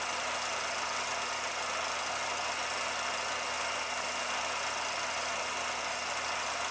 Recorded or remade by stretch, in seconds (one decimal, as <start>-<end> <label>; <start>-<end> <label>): 0.0-6.7 recorded

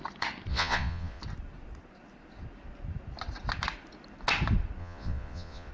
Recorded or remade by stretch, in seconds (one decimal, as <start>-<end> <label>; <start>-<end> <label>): 0.0-0.5 recorded; 0.5-1.2 remade; 1.2-4.8 recorded; 4.8-5.7 remade

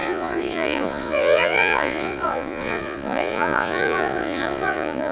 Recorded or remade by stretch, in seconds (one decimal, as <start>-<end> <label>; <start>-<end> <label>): 0.0-5.1 remade